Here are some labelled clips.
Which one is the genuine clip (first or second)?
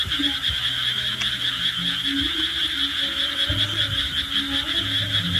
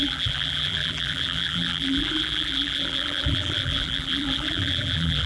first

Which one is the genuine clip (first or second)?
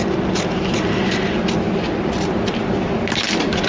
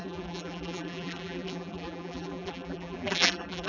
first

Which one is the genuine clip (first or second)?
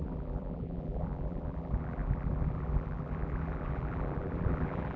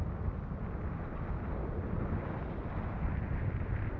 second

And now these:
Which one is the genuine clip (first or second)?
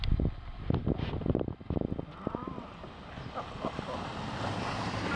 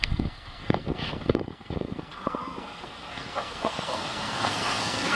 first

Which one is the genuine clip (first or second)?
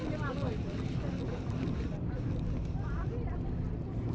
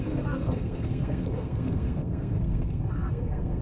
first